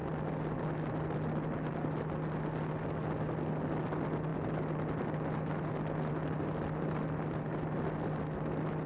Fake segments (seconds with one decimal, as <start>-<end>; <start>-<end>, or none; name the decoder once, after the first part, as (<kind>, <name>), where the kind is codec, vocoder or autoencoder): none